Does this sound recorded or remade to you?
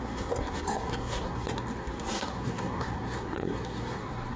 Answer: remade